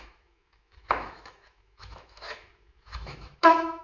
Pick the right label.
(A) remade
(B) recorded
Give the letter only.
A